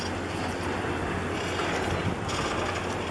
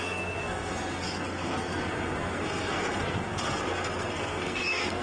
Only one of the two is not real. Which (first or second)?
second